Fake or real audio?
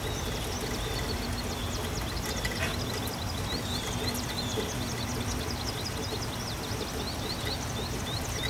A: real